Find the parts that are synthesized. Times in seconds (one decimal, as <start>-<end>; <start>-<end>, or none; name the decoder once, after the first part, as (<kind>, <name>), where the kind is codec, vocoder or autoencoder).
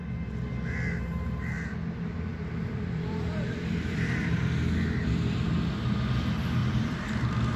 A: 2.3-5.2 (vocoder, BigVGAN v2); 6.6-7.6